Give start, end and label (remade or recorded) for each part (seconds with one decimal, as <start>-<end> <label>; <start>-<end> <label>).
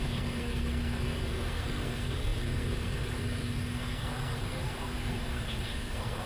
0.0-6.3 remade